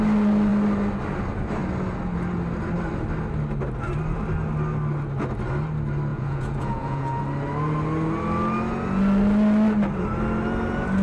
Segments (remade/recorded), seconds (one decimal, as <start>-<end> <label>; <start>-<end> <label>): 0.0-6.1 recorded; 6.1-7.2 remade; 7.2-11.0 recorded